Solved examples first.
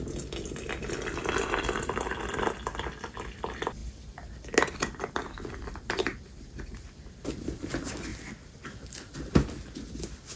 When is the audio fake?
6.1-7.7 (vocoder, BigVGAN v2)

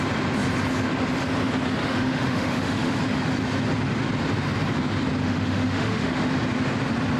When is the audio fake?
1.8-3.0 (autoencoder, DAC-VAE); 5.2-6.3

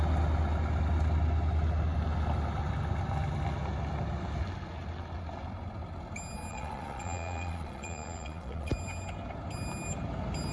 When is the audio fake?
6.5-8.7 (vocoder, Vocos)